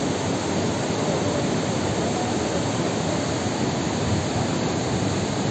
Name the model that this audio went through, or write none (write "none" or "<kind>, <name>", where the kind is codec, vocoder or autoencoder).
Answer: none